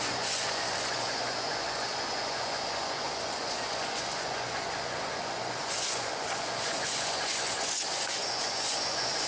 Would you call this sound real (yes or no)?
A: no